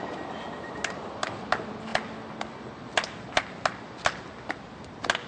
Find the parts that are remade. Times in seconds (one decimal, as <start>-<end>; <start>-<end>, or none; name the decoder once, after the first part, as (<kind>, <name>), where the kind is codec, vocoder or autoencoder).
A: none